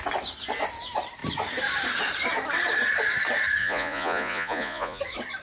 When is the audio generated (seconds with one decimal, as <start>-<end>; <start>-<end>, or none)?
3.6-5.0